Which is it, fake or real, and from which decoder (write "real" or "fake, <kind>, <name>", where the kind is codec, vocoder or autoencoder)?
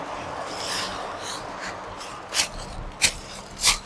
real